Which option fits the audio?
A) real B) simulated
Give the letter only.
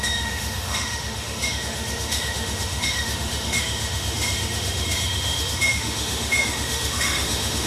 B